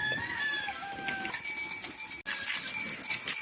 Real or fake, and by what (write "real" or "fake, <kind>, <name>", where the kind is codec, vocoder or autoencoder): real